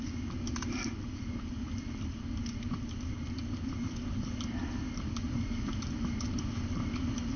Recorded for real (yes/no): yes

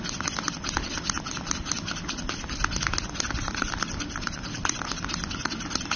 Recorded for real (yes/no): yes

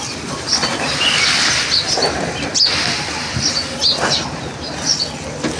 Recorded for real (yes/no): yes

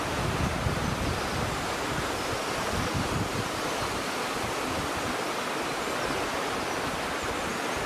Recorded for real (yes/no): yes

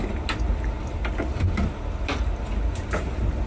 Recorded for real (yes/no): yes